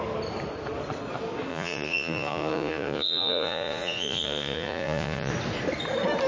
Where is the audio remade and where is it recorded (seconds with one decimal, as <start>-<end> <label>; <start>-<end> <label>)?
0.0-1.5 recorded; 1.5-5.3 remade; 5.3-6.3 recorded